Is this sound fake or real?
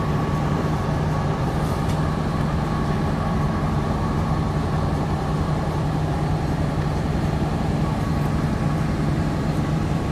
fake